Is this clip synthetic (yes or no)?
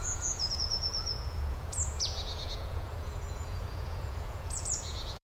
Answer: yes